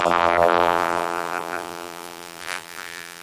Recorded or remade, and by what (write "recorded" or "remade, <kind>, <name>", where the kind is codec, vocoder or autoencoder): remade, vocoder, BigVGAN v2